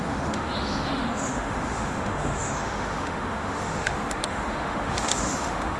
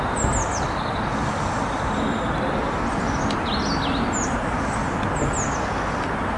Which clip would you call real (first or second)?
second